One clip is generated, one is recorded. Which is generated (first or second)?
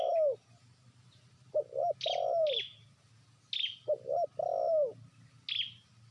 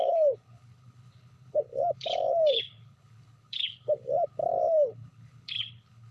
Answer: second